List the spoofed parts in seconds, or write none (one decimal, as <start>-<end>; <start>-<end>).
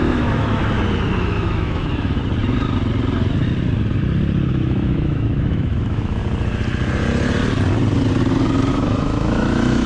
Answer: 0.0-0.6; 1.2-2.2; 4.5-6.2; 8.7-9.9